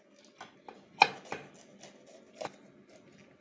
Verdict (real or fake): real